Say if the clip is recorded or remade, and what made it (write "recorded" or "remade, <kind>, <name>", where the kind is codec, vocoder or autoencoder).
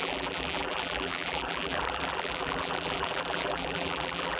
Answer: remade, vocoder, BigVGAN v2